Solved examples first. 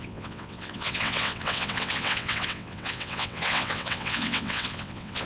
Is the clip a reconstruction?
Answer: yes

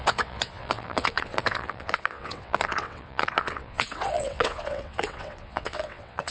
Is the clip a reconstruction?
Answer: yes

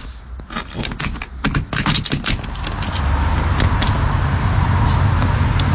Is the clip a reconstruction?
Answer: no